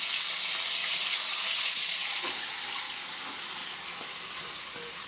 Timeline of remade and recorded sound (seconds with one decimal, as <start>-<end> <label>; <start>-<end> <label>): 0.0-0.8 recorded; 0.8-2.2 remade; 2.2-5.1 recorded